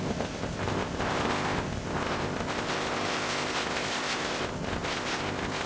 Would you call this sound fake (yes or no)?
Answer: yes